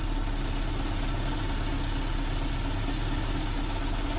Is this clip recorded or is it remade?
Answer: recorded